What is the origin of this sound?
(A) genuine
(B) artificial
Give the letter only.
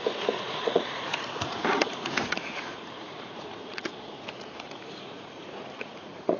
B